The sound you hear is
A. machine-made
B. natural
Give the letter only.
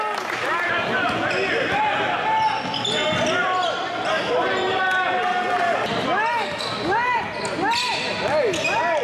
B